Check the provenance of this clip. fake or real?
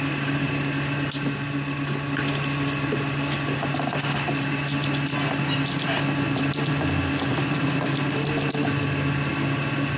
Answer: real